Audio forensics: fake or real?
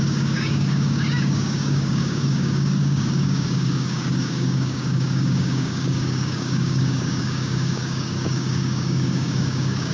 fake